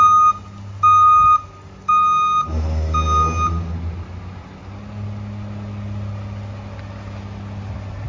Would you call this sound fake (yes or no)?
no